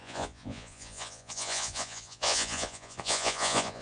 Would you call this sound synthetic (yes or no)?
yes